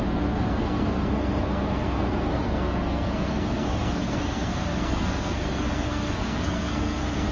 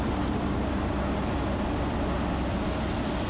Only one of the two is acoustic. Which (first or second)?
second